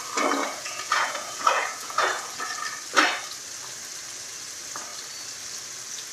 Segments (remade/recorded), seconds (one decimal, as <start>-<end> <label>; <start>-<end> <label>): 0.0-0.4 recorded; 0.4-2.4 remade; 2.4-6.1 recorded